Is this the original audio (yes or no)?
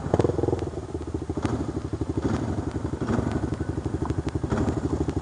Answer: yes